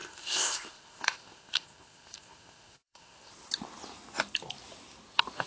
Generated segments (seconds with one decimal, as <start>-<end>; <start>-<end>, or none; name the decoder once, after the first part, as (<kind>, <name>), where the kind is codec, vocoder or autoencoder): 0.0-3.3 (codec, ZipCodec)